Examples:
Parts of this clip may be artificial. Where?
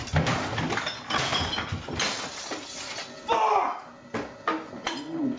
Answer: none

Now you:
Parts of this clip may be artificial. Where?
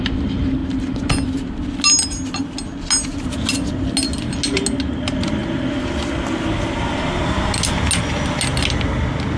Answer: none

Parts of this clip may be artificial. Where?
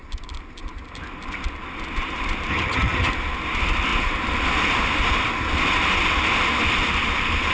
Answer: 2.5-3.1 (vocoder, HiFi-GAN)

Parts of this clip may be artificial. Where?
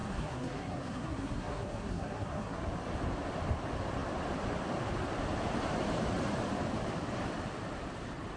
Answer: 0.0-2.7 (codec, SNAC)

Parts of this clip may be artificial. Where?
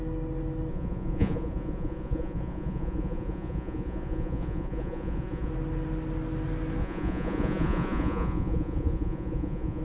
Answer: 0.7-5.5 (vocoder, Vocos); 6.8-9.8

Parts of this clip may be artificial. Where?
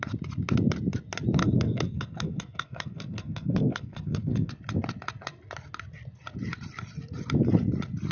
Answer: 1.4-4.5 (codec, SNAC)